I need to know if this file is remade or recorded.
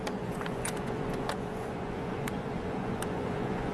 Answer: remade